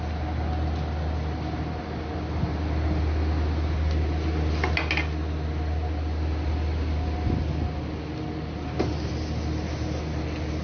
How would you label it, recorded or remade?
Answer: recorded